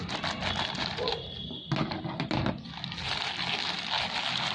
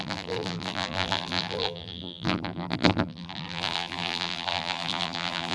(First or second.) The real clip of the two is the first